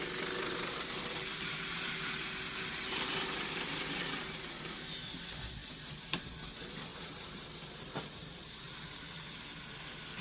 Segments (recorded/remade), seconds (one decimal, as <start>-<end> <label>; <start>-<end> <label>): 0.0-5.6 recorded; 5.6-6.2 remade; 6.2-6.9 recorded; 6.9-8.4 remade; 8.4-10.2 recorded